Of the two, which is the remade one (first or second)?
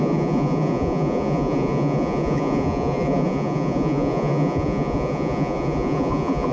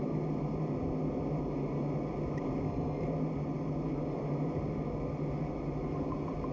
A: first